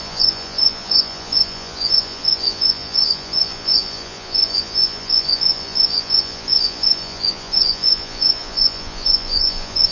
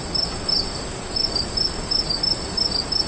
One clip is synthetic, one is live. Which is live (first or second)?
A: second